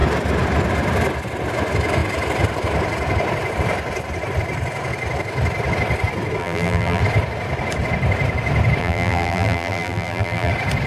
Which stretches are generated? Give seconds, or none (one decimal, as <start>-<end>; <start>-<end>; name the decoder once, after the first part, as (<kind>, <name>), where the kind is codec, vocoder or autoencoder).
6.4-7.0 (vocoder, BigVGAN v2); 8.8-10.5